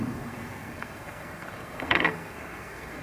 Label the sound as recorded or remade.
remade